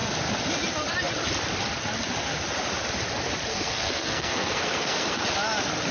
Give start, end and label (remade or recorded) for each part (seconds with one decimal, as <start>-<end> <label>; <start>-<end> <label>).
0.0-3.5 recorded; 3.5-5.2 remade; 5.2-5.9 recorded